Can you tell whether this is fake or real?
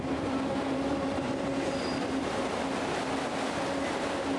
real